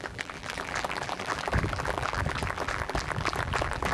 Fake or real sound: fake